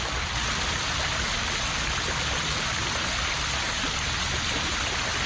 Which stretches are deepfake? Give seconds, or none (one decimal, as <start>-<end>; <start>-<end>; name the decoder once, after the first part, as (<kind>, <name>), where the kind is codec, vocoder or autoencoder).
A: none